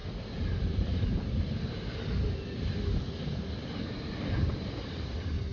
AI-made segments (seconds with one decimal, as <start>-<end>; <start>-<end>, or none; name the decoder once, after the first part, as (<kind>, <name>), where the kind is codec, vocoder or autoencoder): none